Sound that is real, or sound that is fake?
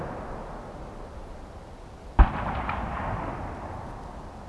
real